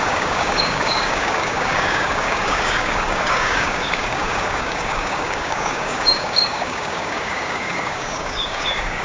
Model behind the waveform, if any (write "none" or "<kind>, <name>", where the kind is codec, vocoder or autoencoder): codec, DAC